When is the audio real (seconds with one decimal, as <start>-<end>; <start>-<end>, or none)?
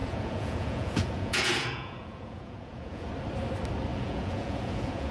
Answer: 3.1-3.9